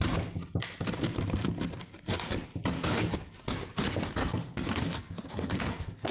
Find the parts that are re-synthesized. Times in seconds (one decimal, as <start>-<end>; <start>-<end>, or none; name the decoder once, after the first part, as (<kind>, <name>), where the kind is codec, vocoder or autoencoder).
4.2-6.1 (codec, SNAC)